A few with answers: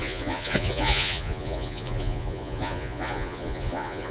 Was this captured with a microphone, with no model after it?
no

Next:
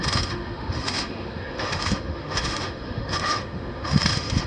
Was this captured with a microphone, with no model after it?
no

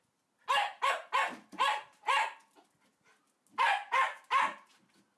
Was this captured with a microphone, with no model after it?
yes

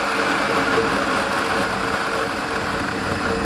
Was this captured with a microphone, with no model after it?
yes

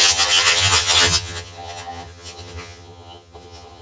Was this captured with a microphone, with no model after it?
no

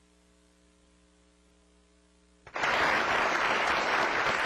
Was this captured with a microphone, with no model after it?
yes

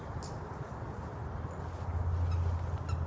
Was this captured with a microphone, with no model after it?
yes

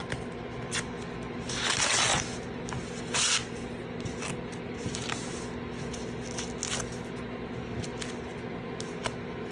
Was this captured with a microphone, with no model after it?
yes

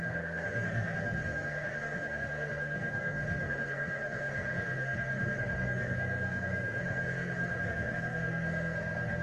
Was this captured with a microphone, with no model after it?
no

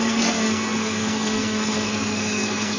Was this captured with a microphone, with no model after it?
no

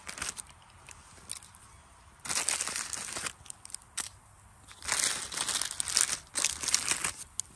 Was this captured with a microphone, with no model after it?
yes